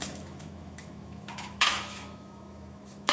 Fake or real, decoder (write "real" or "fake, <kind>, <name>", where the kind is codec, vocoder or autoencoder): fake, autoencoder, DAC-VAE